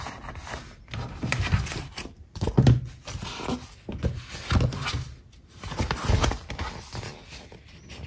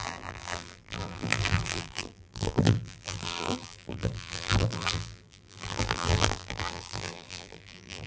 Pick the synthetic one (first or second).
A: second